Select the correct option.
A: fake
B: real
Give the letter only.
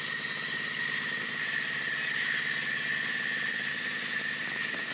B